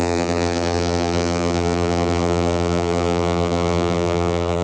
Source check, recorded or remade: remade